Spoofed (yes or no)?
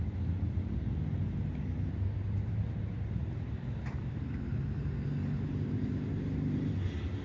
no